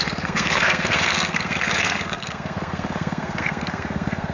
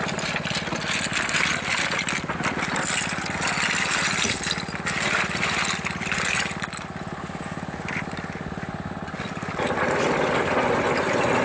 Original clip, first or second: second